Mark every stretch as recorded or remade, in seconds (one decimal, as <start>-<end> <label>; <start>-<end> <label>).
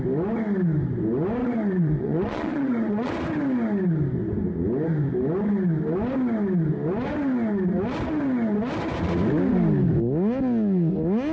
0.0-1.4 recorded; 1.4-3.1 remade; 3.1-11.3 recorded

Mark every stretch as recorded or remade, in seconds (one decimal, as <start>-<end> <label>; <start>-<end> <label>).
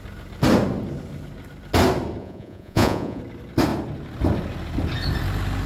0.0-2.2 recorded; 2.2-3.2 remade; 3.2-5.7 recorded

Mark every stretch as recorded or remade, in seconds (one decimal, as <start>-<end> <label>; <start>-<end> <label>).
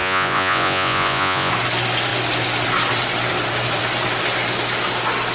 0.0-1.5 remade; 1.5-5.3 recorded